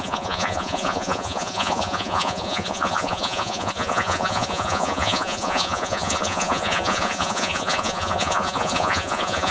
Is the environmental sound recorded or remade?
remade